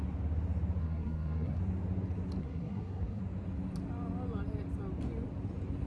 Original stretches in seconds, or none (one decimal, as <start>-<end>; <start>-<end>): 0.0-0.8; 1.6-2.4; 3.2-5.9